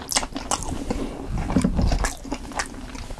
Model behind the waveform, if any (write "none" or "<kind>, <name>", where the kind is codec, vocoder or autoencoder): none